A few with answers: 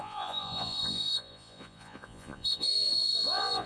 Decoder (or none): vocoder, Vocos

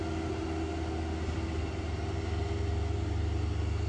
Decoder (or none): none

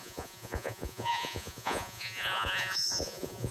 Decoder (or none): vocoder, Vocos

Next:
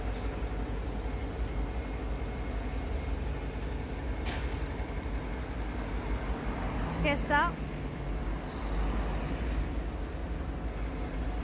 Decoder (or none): none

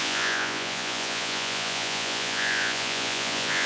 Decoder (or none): vocoder, Vocos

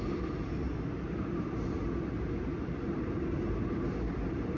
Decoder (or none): none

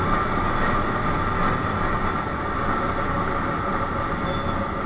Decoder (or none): none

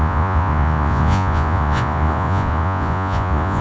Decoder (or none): vocoder, Vocos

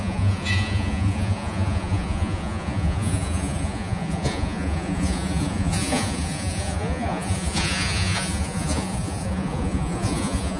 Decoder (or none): vocoder, Vocos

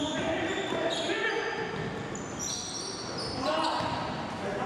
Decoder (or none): none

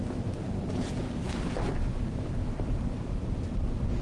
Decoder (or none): none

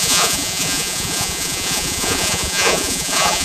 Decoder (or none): vocoder, Vocos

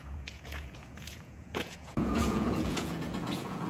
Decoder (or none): vocoder, Vocos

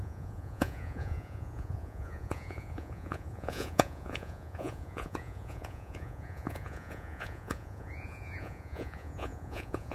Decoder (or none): vocoder, Vocos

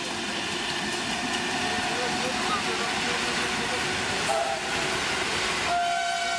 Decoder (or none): none